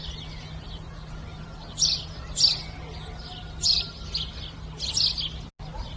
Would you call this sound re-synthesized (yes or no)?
no